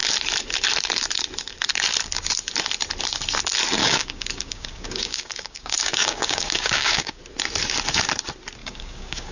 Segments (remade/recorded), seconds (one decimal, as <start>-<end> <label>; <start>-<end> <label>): 0.0-3.8 recorded; 3.8-7.2 remade; 7.2-8.6 recorded; 8.6-9.3 remade